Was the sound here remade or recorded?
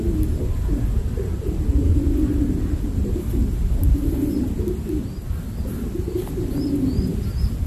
recorded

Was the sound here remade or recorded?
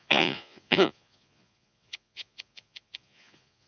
remade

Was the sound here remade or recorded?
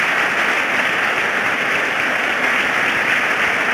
recorded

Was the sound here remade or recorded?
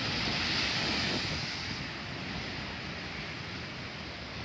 recorded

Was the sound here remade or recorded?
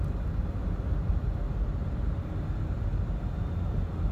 recorded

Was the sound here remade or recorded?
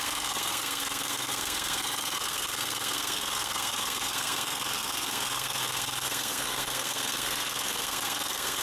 remade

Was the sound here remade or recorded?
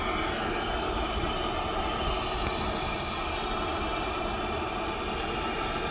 recorded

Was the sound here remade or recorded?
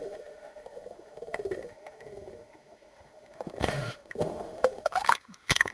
remade